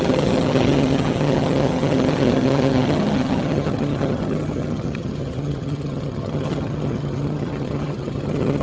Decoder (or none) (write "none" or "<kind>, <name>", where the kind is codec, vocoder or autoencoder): vocoder, HiFi-GAN